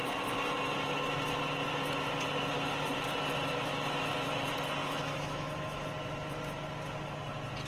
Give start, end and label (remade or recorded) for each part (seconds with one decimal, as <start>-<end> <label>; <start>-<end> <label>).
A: 0.0-4.8 recorded; 4.8-5.8 remade; 5.8-7.7 recorded